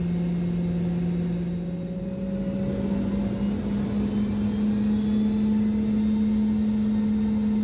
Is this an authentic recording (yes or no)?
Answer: yes